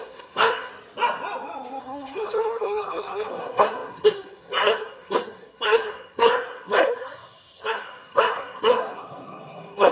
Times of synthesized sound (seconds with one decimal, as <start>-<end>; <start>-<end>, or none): 0.0-0.7; 1.8-9.9